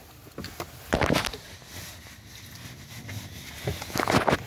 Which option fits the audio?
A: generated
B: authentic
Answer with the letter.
B